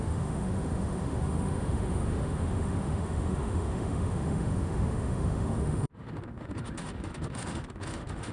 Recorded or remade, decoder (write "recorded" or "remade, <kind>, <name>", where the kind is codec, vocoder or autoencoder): remade, autoencoder, DAC-VAE